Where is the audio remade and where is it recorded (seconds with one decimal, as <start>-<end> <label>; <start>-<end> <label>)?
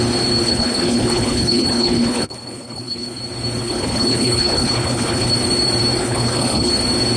0.0-0.4 recorded; 0.4-3.2 remade; 3.2-3.6 recorded; 3.6-5.3 remade; 5.3-6.0 recorded; 6.0-6.7 remade; 6.7-7.2 recorded